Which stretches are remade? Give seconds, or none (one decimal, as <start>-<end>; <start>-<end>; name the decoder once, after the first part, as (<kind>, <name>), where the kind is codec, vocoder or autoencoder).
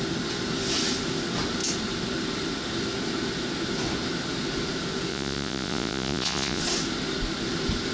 5.1-6.6 (vocoder, Vocos)